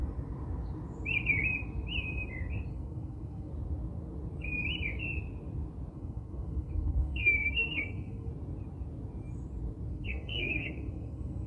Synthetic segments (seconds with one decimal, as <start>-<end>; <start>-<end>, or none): 2.7-3.5; 5.9-8.3; 9.9-11.5